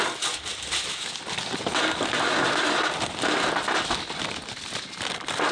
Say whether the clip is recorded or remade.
recorded